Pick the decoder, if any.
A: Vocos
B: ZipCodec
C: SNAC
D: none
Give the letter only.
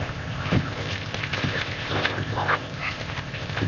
B